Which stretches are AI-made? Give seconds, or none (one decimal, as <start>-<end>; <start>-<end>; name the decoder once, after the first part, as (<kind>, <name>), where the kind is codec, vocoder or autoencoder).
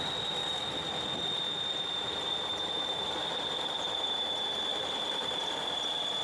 0.4-4.1 (vocoder, BigVGAN v2); 4.7-5.8